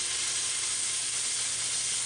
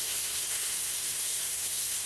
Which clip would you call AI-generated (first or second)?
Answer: second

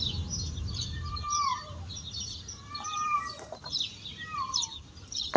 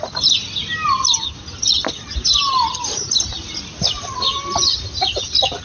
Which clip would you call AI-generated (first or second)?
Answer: first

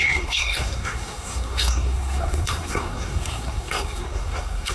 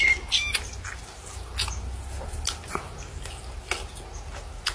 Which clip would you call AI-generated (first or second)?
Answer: first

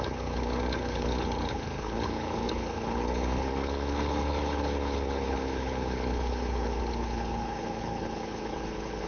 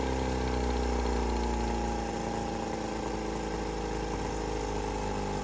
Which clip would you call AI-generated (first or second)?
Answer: first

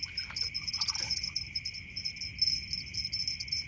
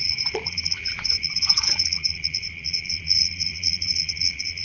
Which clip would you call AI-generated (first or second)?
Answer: second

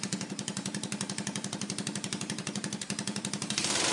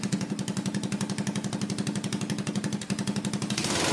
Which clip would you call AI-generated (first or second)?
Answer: first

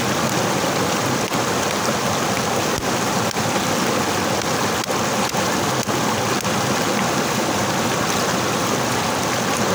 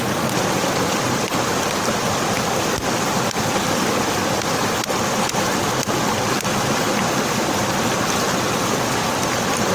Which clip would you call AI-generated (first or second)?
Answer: second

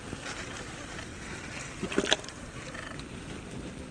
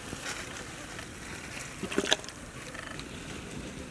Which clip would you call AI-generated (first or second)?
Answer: second